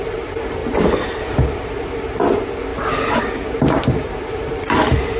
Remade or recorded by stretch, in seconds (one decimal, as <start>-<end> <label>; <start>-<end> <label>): 0.0-5.2 remade